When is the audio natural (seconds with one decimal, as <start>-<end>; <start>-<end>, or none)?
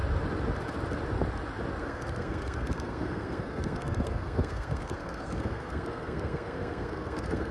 0.0-1.8